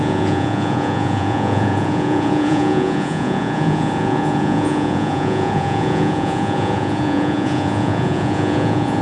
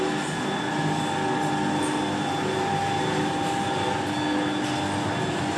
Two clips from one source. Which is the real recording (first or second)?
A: second